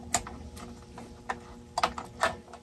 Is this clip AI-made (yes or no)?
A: no